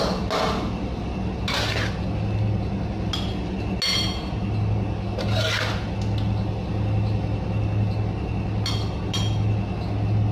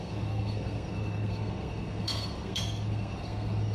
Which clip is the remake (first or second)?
second